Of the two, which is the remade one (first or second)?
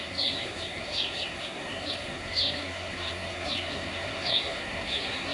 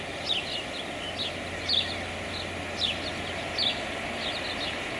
first